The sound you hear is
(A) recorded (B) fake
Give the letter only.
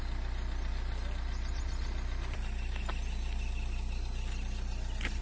A